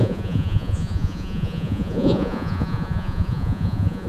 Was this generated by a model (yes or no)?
yes